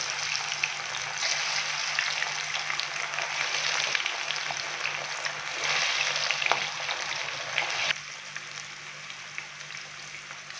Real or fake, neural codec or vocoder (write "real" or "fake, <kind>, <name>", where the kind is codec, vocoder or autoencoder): real